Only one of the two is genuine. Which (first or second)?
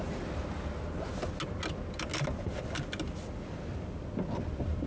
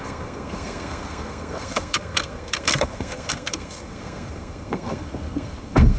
first